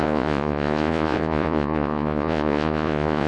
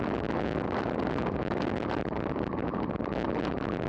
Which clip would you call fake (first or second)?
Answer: first